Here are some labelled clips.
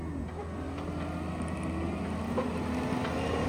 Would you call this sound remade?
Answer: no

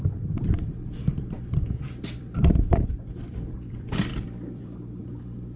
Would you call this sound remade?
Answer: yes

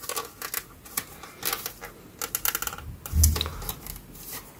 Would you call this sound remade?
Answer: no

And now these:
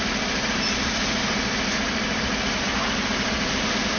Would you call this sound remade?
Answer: no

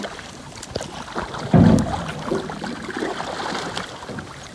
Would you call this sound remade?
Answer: no